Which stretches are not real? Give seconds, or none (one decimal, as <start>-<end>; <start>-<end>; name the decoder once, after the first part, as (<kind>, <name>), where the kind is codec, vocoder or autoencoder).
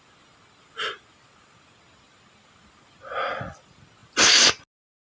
none